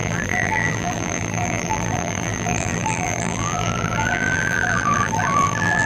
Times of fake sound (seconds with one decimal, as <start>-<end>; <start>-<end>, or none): 0.0-5.9